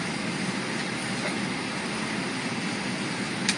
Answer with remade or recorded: recorded